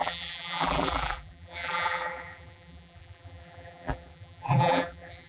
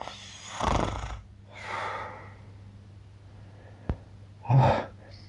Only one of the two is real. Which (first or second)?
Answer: second